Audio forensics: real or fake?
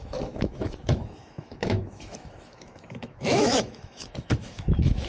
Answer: fake